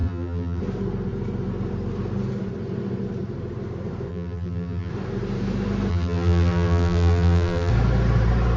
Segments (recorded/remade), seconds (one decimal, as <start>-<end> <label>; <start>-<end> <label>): 0.0-0.6 remade; 0.6-4.1 recorded; 4.1-4.9 remade; 4.9-5.9 recorded; 5.9-7.7 remade; 7.7-8.6 recorded